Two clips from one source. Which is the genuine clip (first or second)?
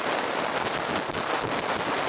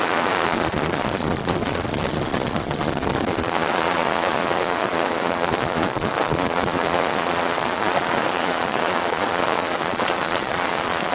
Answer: first